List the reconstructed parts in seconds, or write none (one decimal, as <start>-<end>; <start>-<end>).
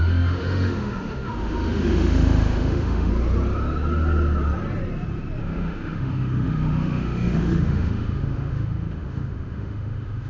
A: 0.0-3.1; 5.4-10.3